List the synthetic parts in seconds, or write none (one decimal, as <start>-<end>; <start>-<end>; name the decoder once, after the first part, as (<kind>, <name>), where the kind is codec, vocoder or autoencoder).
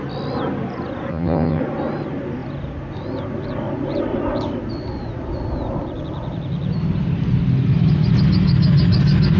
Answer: 1.1-1.6 (vocoder, HiFi-GAN)